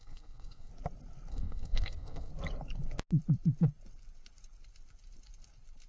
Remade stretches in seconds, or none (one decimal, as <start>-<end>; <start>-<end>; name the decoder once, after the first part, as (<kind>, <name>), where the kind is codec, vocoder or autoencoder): 0.0-0.7 (codec, SNAC); 1.3-2.3